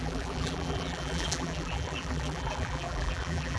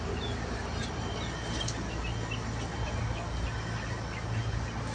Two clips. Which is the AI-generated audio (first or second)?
first